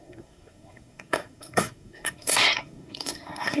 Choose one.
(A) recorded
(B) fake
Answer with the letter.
B